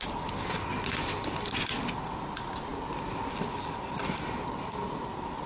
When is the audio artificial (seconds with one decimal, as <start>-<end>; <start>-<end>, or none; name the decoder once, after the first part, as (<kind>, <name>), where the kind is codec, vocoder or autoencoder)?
none